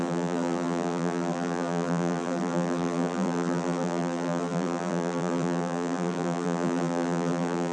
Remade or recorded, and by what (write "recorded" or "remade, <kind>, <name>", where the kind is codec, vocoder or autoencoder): remade, vocoder, BigVGAN v2